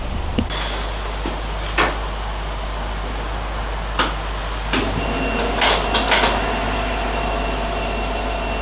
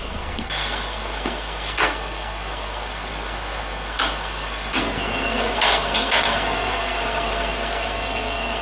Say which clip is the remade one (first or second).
second